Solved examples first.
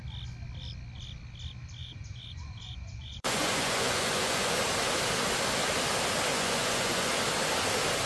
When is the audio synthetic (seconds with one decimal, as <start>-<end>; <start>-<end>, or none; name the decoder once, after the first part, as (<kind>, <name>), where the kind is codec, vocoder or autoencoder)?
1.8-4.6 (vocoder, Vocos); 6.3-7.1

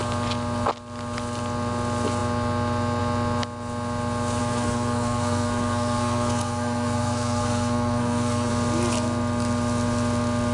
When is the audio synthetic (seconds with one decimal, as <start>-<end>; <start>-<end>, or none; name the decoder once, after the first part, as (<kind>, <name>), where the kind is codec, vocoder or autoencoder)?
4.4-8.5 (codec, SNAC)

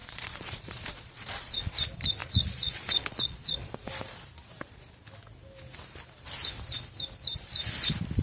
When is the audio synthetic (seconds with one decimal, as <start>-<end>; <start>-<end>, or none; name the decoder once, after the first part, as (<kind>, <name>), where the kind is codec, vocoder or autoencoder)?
0.0-1.7 (vocoder, Vocos); 2.2-3.9

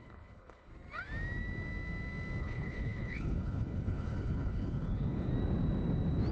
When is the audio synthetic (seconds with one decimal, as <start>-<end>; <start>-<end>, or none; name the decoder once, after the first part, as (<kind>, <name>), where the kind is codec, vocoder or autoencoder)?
0.0-0.7 (codec, HILCodec); 2.4-5.3

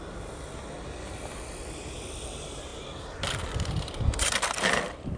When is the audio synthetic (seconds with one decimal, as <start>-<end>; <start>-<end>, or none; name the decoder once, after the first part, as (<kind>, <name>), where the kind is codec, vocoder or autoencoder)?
none

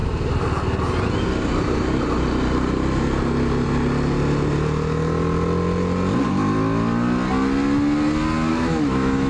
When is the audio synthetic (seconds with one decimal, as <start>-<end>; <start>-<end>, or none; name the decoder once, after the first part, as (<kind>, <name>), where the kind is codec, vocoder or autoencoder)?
8.5-9.3 (autoencoder, DAC-VAE)

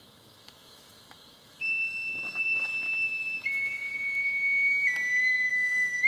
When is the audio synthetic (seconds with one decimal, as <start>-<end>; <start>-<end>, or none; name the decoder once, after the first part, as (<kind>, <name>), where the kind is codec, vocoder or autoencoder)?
0.0-2.7 (autoencoder, DAC-VAE); 3.4-3.9; 5.5-6.1

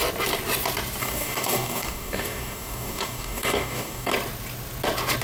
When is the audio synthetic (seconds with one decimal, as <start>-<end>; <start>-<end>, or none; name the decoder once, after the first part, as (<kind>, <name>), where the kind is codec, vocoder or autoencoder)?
1.0-4.1 (codec, DAC)